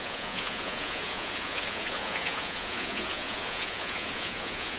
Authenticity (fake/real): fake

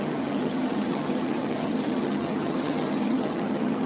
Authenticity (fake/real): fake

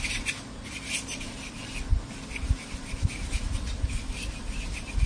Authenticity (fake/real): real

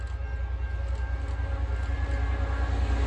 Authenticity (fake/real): real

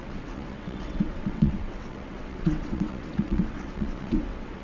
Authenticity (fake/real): fake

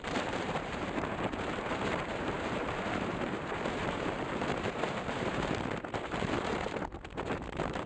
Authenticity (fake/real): fake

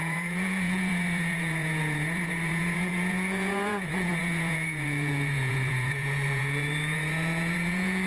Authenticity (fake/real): fake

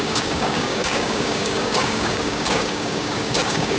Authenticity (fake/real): fake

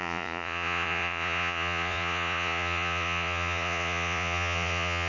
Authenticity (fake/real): fake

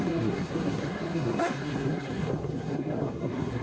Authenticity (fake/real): fake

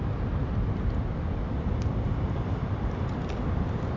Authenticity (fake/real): real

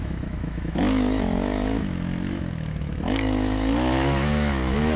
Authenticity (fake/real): fake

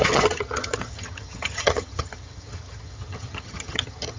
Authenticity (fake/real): fake